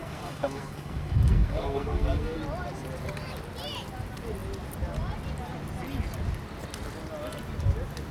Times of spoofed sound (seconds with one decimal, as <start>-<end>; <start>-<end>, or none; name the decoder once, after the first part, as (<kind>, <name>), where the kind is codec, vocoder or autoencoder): 0.0-2.4 (codec, SNAC)